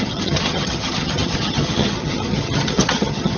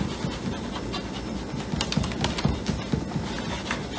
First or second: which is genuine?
second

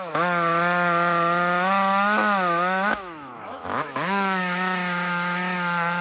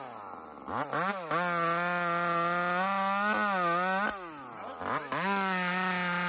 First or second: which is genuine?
second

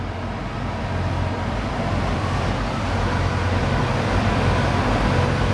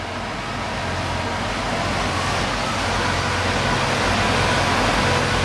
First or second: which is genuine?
second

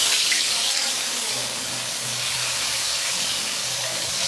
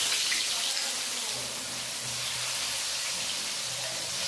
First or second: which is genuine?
second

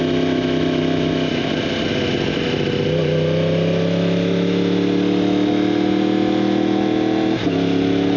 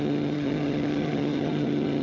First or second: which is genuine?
first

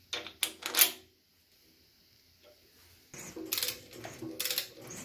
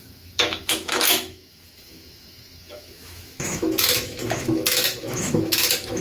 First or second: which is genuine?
first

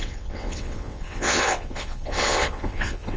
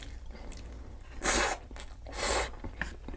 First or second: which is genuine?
second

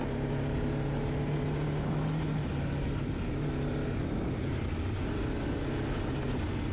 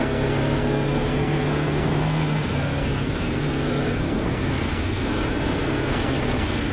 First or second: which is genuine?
first